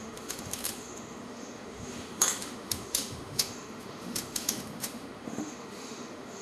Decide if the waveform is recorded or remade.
remade